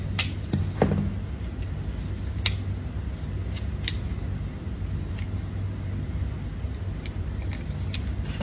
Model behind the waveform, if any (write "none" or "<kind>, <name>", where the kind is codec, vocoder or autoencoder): none